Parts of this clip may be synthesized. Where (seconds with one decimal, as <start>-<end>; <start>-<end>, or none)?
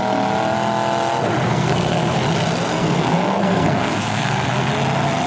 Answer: 1.5-2.1; 2.7-4.7